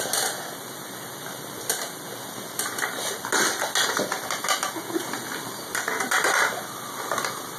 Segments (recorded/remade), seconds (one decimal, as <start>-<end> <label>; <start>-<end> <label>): 0.0-7.6 recorded